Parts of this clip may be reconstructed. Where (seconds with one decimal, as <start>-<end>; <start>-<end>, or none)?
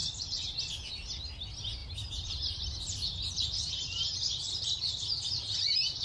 0.0-0.7; 1.8-4.9